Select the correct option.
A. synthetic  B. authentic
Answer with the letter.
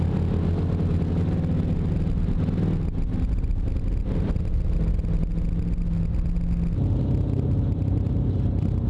B